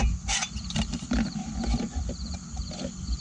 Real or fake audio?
real